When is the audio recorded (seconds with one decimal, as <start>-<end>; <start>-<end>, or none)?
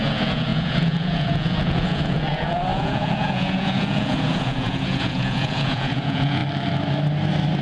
6.4-7.6